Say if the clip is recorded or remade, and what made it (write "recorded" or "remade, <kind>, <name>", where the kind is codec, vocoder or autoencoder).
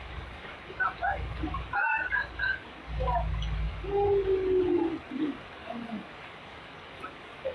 remade, codec, DAC